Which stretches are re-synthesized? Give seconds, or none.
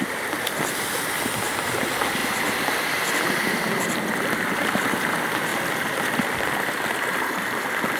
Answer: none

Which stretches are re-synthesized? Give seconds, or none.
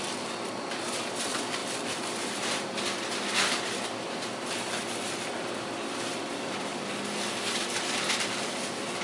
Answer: 0.0-9.0 (vocoder, BigVGAN v2)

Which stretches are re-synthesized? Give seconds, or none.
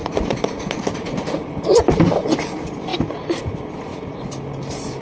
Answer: 0.0-1.8 (vocoder, BigVGAN v2); 3.9-5.0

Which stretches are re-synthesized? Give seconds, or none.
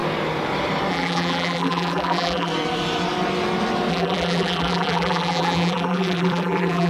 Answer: 0.9-2.5 (vocoder, BigVGAN v2); 3.9-6.9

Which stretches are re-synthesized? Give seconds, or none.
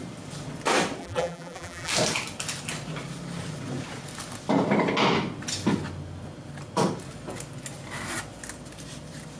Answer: 1.0-1.9 (vocoder, BigVGAN v2)